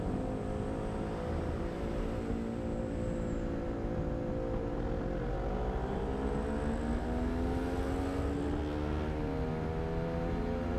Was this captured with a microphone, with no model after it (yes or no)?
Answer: yes